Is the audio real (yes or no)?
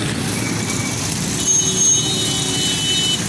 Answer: yes